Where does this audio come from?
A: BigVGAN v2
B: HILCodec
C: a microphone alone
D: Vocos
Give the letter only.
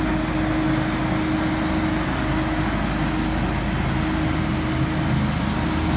C